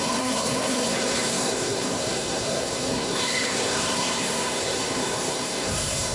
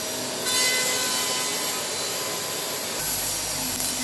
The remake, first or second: first